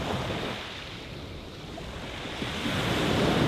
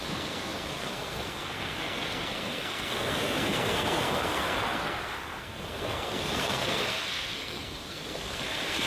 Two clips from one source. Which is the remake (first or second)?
second